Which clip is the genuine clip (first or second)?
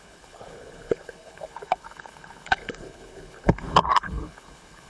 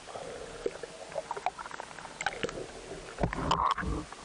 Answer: second